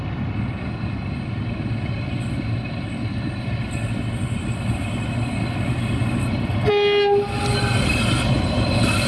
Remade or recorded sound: recorded